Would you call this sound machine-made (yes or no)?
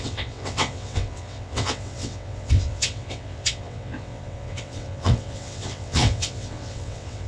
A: yes